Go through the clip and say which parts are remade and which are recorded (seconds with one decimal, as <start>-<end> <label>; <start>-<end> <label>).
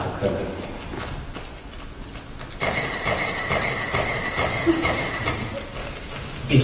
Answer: 0.0-4.5 recorded; 4.5-5.1 remade; 5.1-5.8 recorded; 5.8-6.6 remade